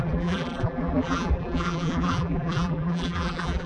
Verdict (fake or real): fake